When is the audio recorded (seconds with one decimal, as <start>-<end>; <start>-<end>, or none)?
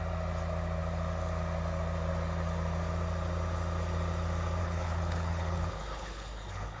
0.0-4.6